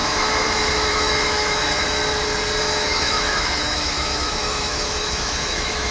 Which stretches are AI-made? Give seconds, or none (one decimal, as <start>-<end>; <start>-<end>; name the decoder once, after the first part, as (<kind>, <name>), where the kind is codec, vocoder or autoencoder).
0.0-2.0 (autoencoder, DAC-VAE); 2.6-5.9